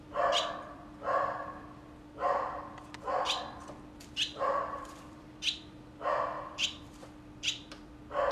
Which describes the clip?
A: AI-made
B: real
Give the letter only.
A